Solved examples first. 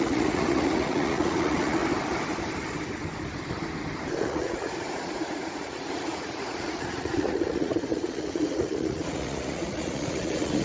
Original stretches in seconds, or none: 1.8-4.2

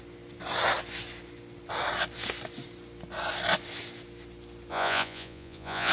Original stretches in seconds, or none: 0.0-4.7

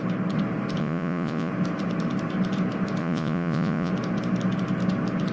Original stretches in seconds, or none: 0.0-0.8; 1.5-3.0; 3.9-5.3

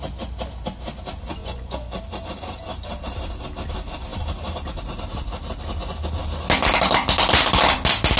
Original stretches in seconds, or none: 0.0-1.4; 2.0-8.2